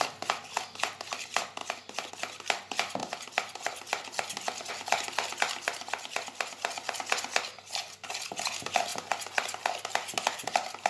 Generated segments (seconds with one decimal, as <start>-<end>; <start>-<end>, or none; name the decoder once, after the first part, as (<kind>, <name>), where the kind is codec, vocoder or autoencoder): none